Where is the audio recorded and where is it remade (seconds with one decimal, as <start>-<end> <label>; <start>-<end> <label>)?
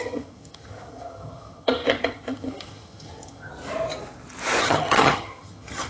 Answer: 0.0-3.5 remade; 3.5-4.6 recorded; 4.6-5.9 remade